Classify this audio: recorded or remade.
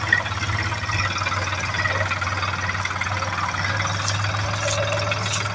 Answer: recorded